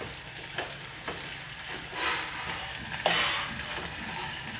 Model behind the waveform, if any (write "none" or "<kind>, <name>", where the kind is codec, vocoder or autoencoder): none